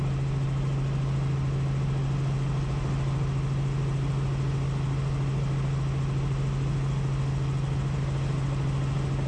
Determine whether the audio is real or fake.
real